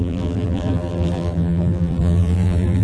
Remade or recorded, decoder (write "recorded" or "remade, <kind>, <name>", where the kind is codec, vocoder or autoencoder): remade, vocoder, BigVGAN v2